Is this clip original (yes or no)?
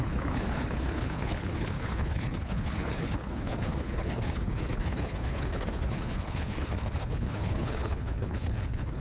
no